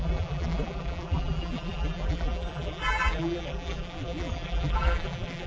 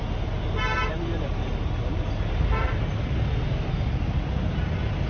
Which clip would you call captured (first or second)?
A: second